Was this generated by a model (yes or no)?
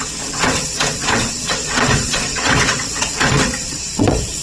yes